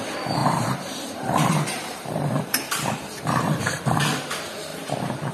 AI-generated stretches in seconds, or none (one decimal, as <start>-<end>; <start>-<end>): 0.4-3.6